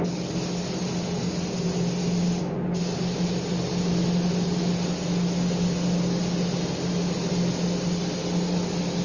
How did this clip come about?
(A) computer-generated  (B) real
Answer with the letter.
B